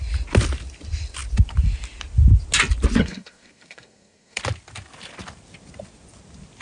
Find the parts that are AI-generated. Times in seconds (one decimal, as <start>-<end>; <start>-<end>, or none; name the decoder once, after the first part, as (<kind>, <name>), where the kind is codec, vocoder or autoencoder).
3.0-4.4 (codec, SNAC)